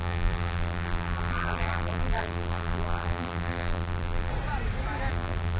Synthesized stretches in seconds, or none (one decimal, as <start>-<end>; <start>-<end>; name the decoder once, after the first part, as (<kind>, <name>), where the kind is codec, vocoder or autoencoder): 0.0-4.3 (vocoder, BigVGAN v2); 5.1-5.6

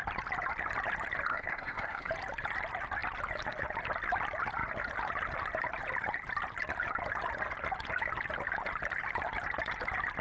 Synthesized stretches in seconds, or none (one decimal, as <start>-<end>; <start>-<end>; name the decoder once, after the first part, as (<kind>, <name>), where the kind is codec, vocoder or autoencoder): 1.3-2.1 (codec, SNAC)

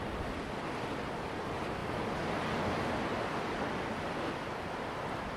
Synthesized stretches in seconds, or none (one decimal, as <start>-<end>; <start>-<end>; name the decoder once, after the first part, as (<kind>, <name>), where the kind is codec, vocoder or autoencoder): none

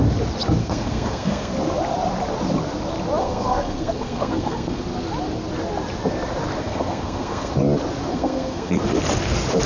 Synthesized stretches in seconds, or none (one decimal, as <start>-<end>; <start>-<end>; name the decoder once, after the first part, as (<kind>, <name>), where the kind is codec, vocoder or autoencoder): 0.6-1.5 (codec, SNAC); 3.2-4.8; 6.6-7.5; 8.1-8.8

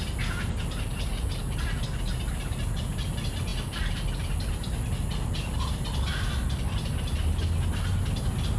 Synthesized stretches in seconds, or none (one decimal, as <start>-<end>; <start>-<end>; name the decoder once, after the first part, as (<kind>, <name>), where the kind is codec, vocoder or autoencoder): none

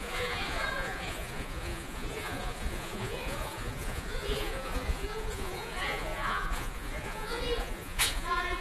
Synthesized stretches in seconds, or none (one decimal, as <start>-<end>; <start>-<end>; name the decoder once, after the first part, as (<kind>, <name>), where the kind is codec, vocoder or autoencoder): 0.0-8.6 (vocoder, Vocos)